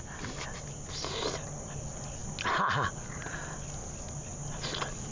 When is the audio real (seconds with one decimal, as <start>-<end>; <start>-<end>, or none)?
0.0-5.1